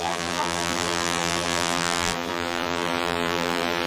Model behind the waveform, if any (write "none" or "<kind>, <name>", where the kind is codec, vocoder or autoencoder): vocoder, BigVGAN v2